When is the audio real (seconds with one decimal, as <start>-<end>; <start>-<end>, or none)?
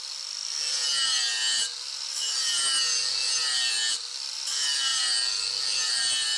0.0-6.4